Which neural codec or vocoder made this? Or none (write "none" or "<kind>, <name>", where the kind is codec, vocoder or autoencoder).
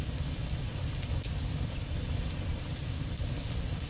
none